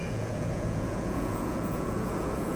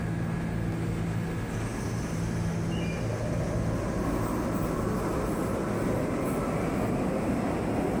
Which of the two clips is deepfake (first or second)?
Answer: first